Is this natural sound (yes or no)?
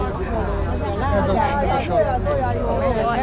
yes